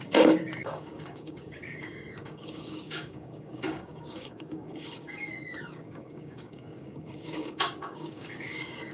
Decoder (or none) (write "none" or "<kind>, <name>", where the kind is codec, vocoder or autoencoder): codec, DAC